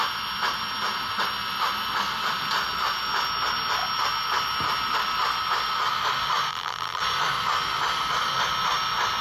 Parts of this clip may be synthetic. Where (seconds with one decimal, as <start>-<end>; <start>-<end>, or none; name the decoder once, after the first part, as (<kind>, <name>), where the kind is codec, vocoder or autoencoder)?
6.5-7.0 (vocoder, BigVGAN v2)